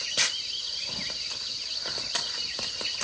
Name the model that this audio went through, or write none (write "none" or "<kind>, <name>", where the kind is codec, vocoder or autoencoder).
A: none